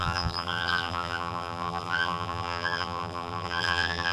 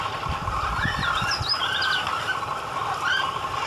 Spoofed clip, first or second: first